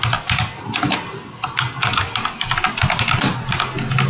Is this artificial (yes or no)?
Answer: no